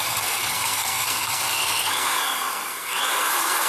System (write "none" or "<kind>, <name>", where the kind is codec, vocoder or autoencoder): codec, SNAC